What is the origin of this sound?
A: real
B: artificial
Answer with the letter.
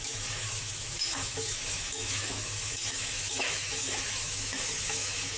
B